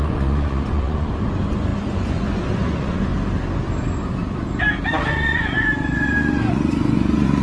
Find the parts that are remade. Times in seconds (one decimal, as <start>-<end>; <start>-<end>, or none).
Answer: 0.0-3.1; 5.1-7.4